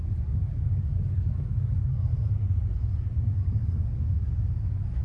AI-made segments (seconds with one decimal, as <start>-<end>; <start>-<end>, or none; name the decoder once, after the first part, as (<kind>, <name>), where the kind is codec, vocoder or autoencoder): 0.0-2.1 (codec, DAC); 3.2-5.0